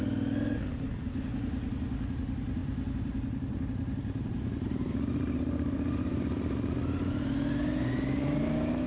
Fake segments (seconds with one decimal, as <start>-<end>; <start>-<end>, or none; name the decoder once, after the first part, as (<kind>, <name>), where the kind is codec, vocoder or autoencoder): 2.6-7.1 (vocoder, BigVGAN v2)